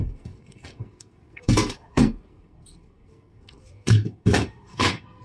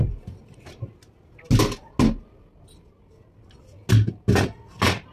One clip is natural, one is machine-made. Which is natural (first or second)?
second